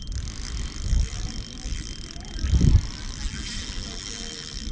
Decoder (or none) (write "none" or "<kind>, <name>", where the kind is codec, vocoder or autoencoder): none